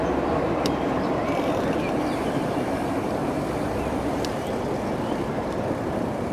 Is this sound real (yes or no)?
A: no